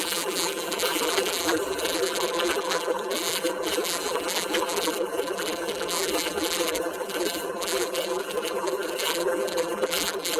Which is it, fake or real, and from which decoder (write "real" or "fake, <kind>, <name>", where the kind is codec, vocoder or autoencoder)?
fake, vocoder, BigVGAN v2